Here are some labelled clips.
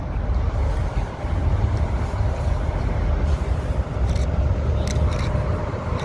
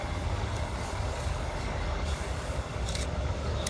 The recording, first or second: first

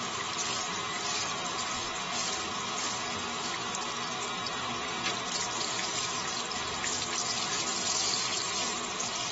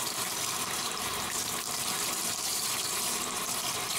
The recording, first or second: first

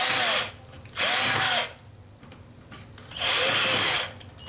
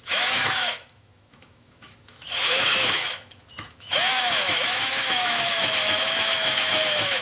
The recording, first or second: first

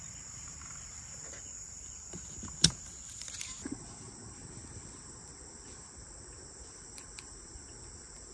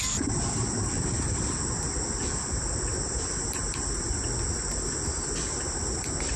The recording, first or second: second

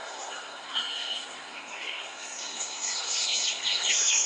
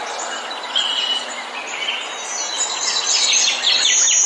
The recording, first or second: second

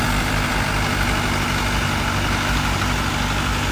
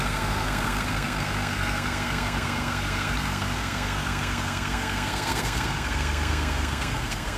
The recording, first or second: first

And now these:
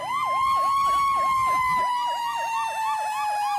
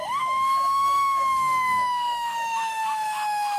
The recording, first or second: first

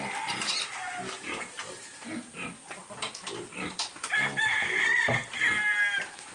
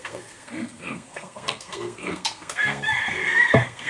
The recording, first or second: first